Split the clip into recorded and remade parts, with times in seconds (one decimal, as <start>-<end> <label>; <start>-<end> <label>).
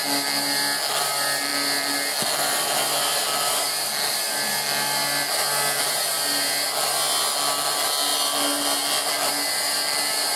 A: 0.0-10.4 recorded